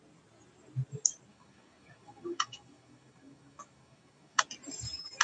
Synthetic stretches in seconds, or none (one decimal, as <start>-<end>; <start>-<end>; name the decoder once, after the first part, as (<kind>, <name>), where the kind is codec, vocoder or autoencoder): 1.3-4.4 (autoencoder, DAC-VAE)